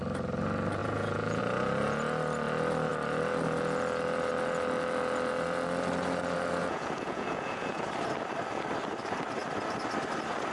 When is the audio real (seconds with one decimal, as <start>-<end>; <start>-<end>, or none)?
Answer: 0.0-0.8; 1.4-6.6; 7.8-10.5